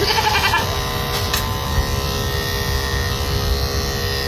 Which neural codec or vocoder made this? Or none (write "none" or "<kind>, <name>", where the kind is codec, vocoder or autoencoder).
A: none